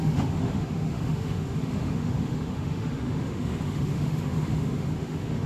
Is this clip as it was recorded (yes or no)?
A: no